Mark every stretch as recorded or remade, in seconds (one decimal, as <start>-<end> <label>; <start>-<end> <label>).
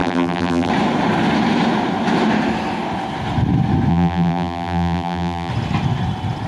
0.0-0.7 remade; 0.7-3.9 recorded; 3.9-5.5 remade; 5.5-6.5 recorded